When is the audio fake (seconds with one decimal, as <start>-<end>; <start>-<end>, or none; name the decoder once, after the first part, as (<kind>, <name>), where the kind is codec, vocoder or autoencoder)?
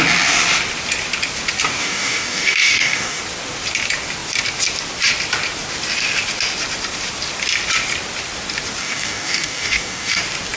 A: 1.8-3.2 (codec, DAC); 8.8-10.2